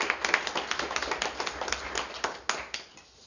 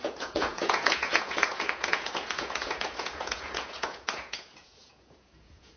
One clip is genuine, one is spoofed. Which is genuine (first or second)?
first